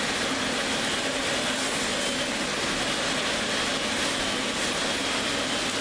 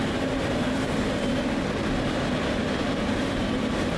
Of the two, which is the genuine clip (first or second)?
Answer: first